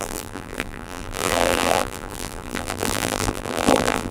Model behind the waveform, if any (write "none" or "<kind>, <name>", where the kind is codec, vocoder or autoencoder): vocoder, BigVGAN v2